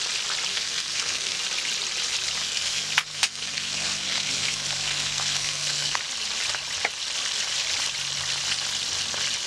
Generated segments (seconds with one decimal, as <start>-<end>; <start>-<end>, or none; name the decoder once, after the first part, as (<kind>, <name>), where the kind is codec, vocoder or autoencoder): 0.5-1.4 (codec, SNAC); 2.4-6.0